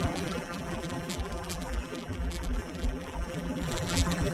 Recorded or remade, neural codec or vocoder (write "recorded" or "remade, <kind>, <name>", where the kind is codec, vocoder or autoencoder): remade, vocoder, BigVGAN v2